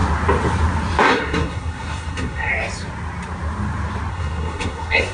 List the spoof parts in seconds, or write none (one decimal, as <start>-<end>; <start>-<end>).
1.0-2.5; 4.1-5.1

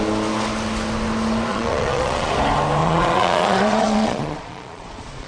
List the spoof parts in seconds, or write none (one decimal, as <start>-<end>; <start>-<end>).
1.5-2.3; 2.8-5.3

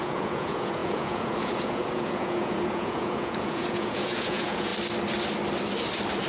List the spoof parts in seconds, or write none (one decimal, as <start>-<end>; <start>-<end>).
0.0-4.7

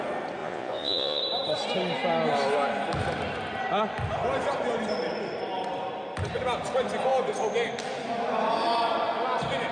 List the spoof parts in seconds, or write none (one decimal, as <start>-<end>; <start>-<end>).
0.4-1.2

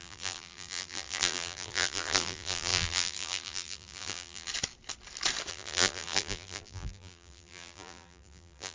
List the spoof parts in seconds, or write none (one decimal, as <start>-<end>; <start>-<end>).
0.0-4.5; 5.5-8.7

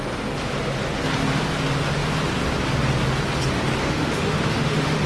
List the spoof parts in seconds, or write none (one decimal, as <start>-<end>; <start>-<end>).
3.8-5.1

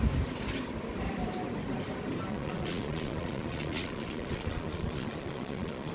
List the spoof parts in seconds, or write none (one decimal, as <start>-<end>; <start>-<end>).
2.3-5.9